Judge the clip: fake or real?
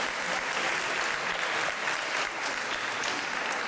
real